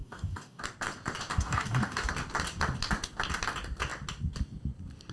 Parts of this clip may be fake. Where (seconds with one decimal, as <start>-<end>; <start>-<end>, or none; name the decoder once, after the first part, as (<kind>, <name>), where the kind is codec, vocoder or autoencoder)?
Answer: 0.0-0.6 (codec, DAC); 1.3-2.1